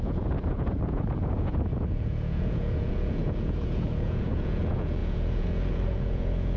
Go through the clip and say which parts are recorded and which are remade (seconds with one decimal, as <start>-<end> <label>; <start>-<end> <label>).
0.0-6.6 remade